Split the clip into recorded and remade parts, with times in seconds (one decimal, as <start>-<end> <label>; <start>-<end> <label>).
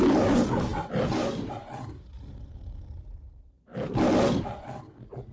0.0-5.3 recorded